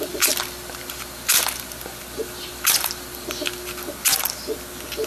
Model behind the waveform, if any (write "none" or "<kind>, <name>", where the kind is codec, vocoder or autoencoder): none